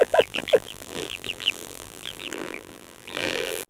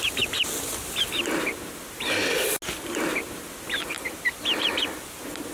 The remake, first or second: first